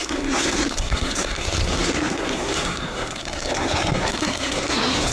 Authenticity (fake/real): fake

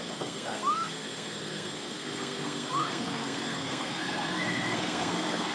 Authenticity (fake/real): fake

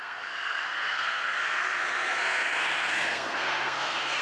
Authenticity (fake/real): fake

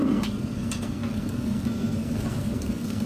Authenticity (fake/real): fake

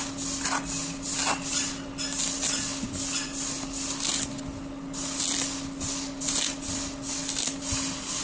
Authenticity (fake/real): real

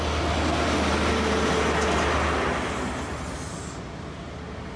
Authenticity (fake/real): real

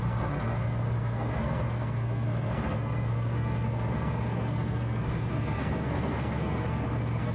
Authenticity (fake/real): fake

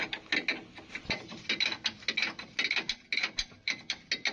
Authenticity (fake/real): real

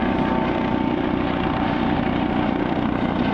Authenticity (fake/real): real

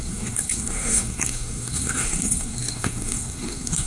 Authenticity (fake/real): fake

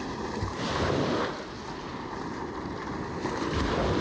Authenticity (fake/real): real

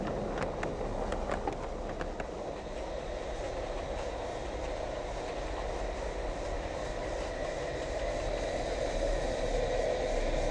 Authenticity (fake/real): real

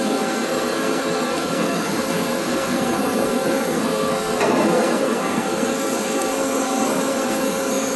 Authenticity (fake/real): fake